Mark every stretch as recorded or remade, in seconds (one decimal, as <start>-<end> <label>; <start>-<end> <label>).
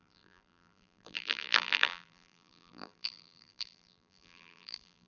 0.0-5.1 remade